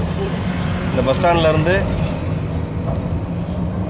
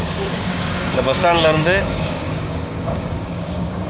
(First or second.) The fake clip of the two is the second